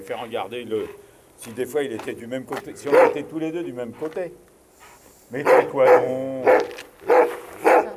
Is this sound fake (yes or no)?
no